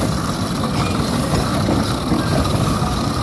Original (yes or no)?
yes